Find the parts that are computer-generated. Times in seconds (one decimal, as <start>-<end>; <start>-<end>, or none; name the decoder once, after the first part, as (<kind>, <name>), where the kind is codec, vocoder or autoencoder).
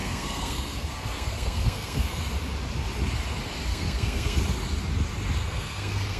0.0-2.2 (codec, SNAC); 3.7-4.4; 5.4-6.2